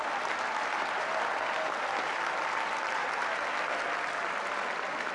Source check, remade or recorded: recorded